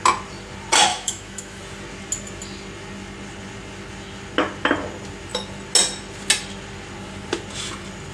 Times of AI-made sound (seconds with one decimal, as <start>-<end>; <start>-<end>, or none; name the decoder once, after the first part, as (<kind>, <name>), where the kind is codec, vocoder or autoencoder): 0.9-1.6 (autoencoder, DAC-VAE)